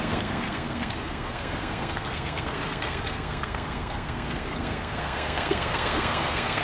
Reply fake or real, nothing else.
fake